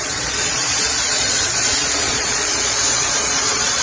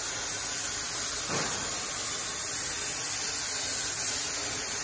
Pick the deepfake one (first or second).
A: first